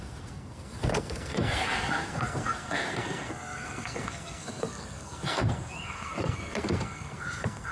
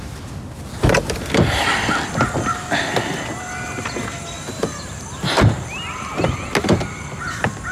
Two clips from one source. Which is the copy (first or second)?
first